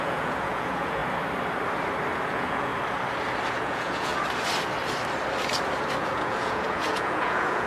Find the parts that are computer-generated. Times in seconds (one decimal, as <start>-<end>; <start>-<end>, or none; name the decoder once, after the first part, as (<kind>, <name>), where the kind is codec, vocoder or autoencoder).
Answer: 0.0-1.0 (vocoder, Vocos); 2.3-2.7; 3.5-4.1; 6.0-7.7